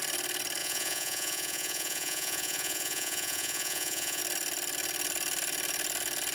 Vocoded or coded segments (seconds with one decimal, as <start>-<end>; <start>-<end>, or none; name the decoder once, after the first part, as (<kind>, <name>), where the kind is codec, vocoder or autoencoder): 0.6-4.2 (vocoder, Vocos)